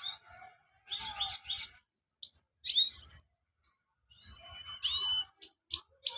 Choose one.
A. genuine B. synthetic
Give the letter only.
A